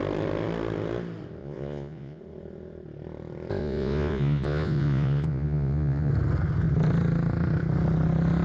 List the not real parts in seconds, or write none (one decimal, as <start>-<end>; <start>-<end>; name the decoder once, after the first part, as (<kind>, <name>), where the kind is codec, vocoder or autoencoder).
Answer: 1.4-2.2 (vocoder, Vocos); 3.6-6.1